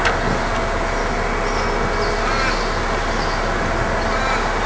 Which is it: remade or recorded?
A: recorded